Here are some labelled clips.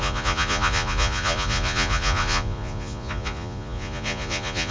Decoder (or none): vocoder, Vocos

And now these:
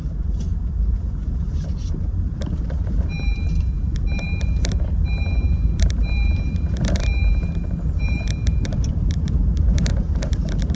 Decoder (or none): vocoder, BigVGAN v2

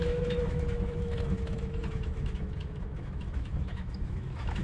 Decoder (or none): autoencoder, DAC-VAE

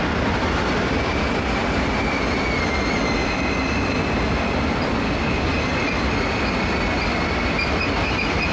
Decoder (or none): none